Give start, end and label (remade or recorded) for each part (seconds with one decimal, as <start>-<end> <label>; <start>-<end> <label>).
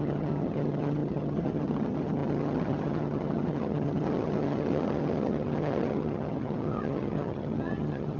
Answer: 0.0-8.2 remade